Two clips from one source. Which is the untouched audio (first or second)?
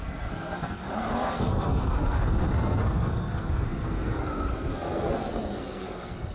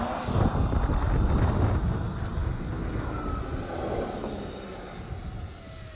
second